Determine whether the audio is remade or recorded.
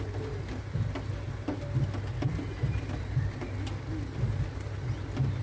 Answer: recorded